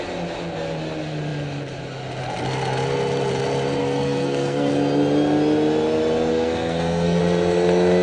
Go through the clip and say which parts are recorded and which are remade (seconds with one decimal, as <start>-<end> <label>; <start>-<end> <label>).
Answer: 0.0-3.8 recorded; 3.8-4.7 remade; 4.7-6.3 recorded; 6.3-7.2 remade; 7.2-8.0 recorded